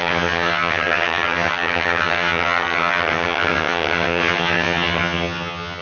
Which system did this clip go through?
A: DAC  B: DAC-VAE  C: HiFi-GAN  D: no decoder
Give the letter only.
C